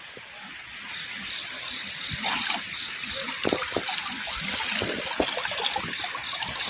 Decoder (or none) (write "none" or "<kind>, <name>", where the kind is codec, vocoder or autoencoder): none